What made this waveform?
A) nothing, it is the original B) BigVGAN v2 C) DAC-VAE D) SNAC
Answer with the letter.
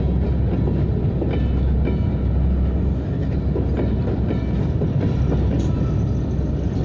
A